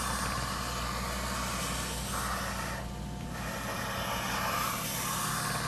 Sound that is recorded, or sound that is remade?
recorded